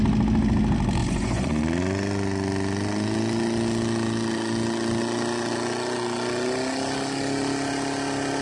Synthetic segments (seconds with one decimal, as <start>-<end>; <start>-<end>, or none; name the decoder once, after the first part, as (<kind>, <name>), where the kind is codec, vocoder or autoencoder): 1.0-1.6 (vocoder, Vocos)